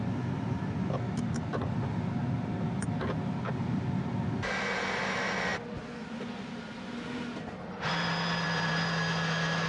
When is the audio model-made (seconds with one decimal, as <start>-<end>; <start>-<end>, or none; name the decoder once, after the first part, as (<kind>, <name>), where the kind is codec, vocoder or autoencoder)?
none